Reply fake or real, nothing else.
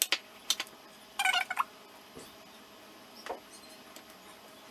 real